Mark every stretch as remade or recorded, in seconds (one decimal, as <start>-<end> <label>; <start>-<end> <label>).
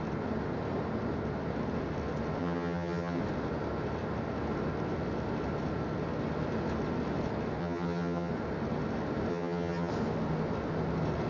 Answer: 0.0-2.4 recorded; 2.4-3.2 remade; 3.2-7.6 recorded; 7.6-8.3 remade; 8.3-9.3 recorded; 9.3-9.9 remade; 9.9-11.3 recorded